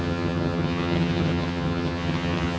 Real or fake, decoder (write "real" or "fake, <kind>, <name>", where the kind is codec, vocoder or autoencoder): fake, vocoder, HiFi-GAN